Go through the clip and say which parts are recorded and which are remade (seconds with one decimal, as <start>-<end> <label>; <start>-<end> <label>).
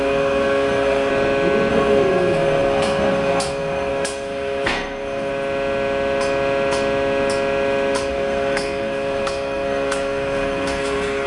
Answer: 0.0-1.1 remade; 1.1-1.7 recorded; 1.7-5.3 remade; 5.3-8.1 recorded; 8.1-11.3 remade